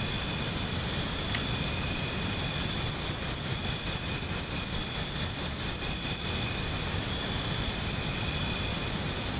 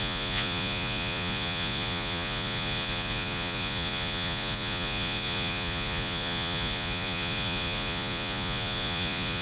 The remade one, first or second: second